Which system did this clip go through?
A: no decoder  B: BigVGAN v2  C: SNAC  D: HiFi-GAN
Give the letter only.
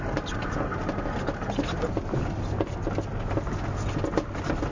A